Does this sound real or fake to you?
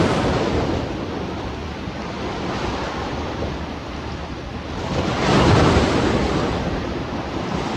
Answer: real